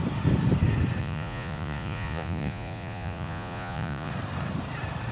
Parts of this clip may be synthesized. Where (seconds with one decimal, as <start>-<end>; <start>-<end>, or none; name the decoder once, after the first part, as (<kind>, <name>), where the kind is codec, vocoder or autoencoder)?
1.0-4.1 (vocoder, Vocos)